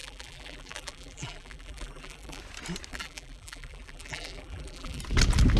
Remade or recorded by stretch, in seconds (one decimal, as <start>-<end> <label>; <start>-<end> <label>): 0.0-2.4 remade; 2.4-2.9 recorded; 2.9-5.0 remade; 5.0-5.6 recorded